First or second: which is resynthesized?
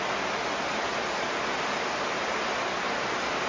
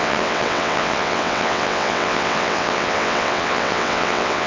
second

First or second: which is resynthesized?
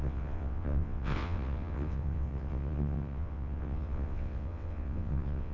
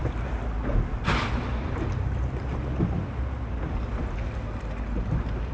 first